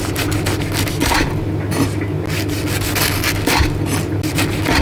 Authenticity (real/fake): real